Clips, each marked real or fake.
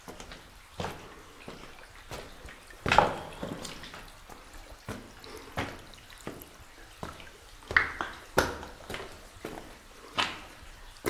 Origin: real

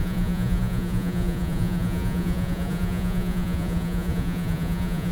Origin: fake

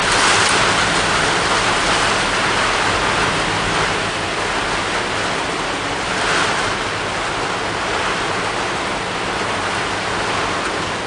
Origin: real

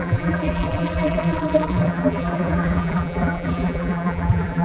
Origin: fake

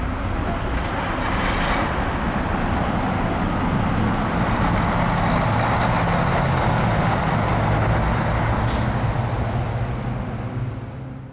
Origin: real